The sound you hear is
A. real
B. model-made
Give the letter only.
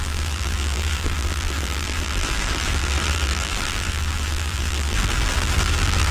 B